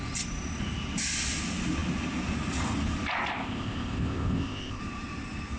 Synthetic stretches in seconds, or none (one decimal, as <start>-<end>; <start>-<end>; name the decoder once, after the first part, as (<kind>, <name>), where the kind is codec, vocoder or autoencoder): 3.3-4.8 (codec, ZipCodec)